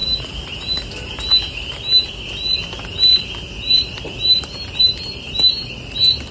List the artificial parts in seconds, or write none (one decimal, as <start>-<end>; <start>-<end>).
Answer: none